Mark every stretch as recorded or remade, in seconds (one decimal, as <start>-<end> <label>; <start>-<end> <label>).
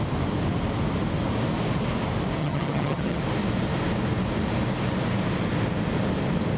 0.0-2.4 recorded; 2.4-3.2 remade; 3.2-6.6 recorded